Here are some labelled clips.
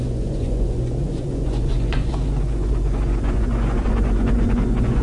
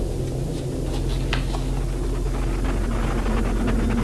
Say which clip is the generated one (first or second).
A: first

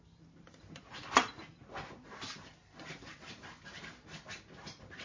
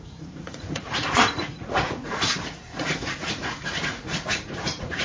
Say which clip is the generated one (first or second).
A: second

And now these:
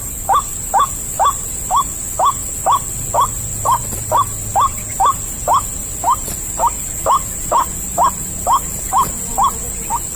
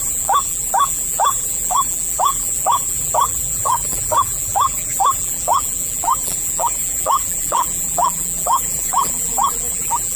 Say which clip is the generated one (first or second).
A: second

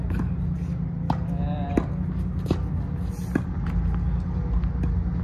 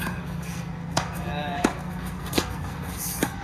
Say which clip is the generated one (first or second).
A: second